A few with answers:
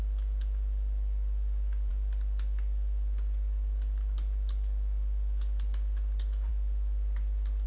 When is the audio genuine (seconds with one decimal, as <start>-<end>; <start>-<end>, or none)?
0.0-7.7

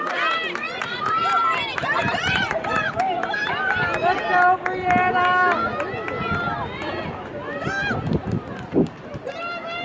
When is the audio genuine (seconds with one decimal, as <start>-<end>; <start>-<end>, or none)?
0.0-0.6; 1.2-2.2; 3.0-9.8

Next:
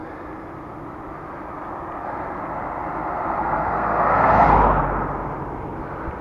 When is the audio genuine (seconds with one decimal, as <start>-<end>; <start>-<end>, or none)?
0.0-3.4; 4.4-6.2

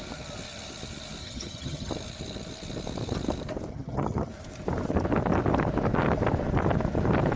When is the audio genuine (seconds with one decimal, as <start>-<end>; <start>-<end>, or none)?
0.0-1.2; 1.9-3.7; 4.3-7.4

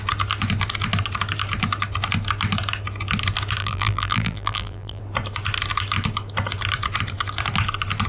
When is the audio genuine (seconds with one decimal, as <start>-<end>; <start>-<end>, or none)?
0.0-3.6; 5.0-8.1